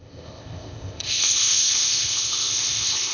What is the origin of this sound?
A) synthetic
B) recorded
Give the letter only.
A